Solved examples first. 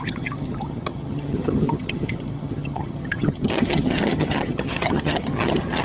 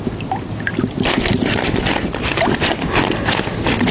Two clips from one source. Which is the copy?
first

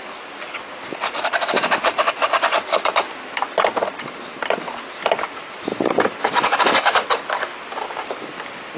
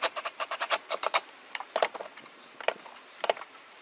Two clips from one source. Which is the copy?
second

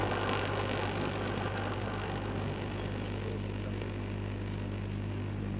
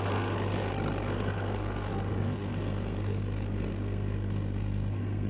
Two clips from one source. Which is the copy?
second